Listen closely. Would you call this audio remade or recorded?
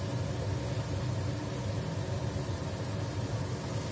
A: recorded